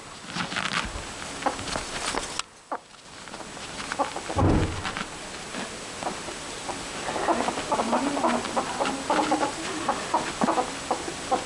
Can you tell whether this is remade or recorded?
recorded